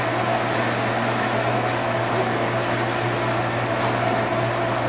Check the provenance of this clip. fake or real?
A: real